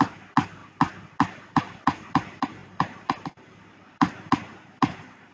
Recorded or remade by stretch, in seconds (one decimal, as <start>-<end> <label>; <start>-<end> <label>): 0.0-5.3 recorded